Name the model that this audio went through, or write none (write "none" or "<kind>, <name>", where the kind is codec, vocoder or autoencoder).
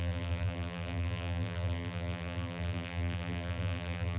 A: vocoder, BigVGAN v2